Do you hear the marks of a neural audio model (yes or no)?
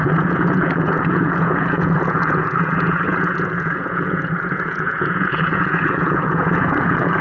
yes